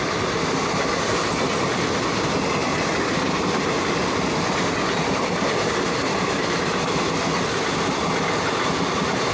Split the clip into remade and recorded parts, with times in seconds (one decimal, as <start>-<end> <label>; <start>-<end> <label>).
0.0-9.3 recorded